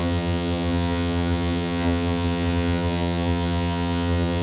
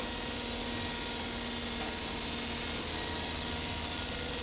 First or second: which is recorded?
second